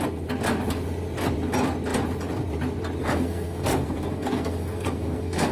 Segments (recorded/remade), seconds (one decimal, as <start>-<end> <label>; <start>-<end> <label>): 0.0-3.0 recorded; 3.0-5.5 remade